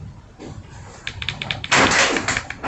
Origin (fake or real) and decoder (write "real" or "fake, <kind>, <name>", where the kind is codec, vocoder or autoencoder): real